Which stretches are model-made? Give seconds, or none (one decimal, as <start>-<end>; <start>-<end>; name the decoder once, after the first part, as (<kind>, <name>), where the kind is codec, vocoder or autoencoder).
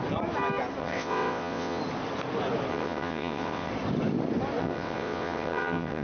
0.8-1.8 (vocoder, WaveNeXt); 2.7-3.7; 4.6-6.0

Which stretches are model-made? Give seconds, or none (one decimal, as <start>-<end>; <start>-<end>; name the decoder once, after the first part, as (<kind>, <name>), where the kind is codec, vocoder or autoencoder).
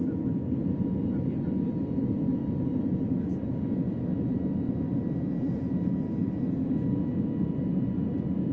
none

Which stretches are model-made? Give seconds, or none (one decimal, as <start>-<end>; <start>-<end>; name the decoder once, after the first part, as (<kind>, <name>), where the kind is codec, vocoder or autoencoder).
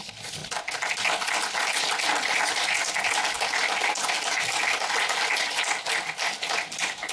none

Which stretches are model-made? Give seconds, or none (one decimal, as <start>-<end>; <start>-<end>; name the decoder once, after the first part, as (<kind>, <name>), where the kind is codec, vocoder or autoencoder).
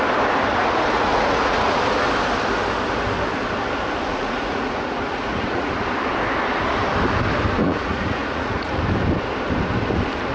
0.5-1.8 (vocoder, Vocos); 4.1-5.7; 7.6-8.8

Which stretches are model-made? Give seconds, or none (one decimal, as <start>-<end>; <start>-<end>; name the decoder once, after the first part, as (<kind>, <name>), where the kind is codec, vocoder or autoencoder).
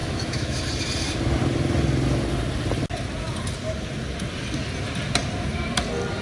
0.0-0.6 (autoencoder, DAC-VAE)